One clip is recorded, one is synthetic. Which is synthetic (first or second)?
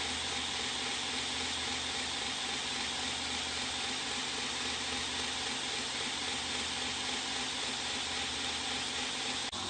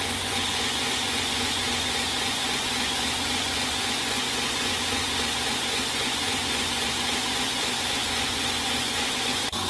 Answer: second